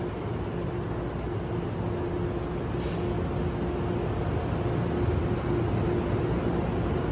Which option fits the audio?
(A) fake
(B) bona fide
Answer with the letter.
B